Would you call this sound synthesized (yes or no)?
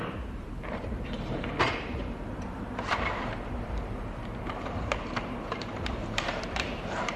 yes